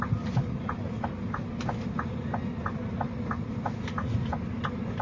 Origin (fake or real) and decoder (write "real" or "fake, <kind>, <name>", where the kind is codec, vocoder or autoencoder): real